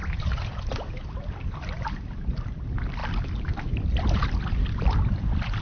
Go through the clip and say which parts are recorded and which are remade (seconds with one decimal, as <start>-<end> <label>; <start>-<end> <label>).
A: 0.0-5.6 recorded